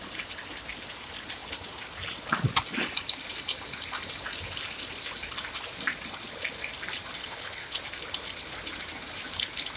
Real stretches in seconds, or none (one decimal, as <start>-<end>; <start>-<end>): 0.0-7.2; 7.8-9.8